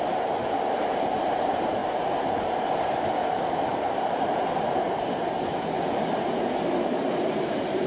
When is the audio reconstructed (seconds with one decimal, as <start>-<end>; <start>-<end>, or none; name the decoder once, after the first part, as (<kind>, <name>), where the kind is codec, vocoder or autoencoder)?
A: 0.0-1.8 (vocoder, BigVGAN v2); 2.5-7.9